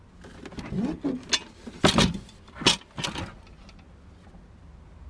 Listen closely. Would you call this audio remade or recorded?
recorded